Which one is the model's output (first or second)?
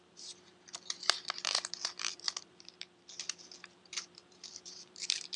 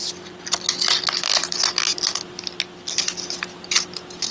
first